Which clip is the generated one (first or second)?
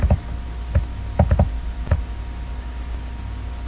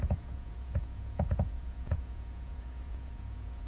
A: second